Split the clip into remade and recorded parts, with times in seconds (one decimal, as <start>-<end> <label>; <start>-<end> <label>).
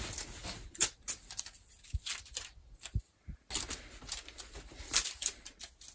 0.0-5.9 recorded